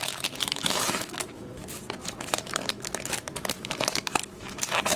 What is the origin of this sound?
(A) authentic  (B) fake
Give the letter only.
B